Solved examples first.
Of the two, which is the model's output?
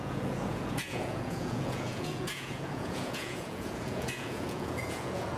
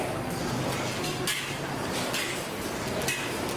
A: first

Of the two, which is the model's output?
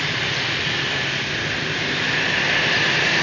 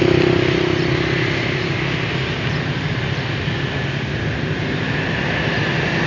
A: first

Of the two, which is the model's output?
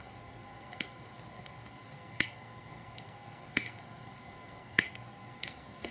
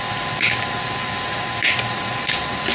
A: first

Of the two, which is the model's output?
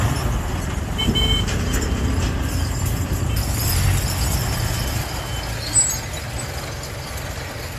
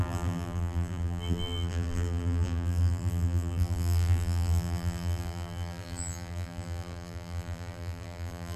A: second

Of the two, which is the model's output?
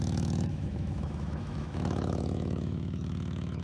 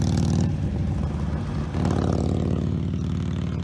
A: first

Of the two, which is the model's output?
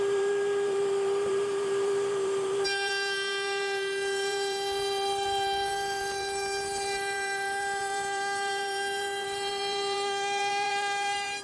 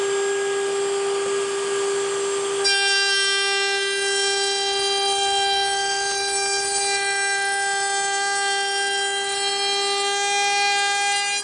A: first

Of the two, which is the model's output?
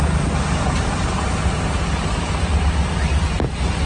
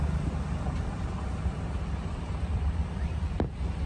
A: second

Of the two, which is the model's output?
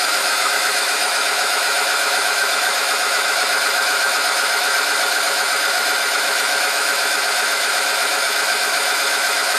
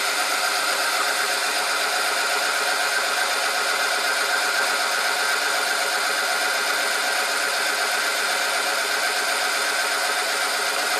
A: first